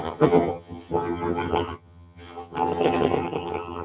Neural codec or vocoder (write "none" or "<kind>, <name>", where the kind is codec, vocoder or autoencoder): vocoder, HiFi-GAN